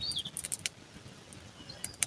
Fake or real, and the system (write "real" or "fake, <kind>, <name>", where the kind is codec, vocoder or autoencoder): real